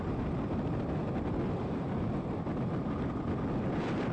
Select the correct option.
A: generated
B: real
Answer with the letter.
B